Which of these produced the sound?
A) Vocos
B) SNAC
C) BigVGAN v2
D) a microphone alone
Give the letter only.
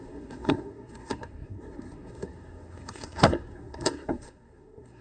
B